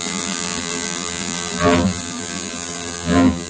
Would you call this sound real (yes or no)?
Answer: no